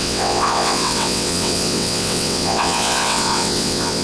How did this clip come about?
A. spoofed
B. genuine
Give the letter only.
A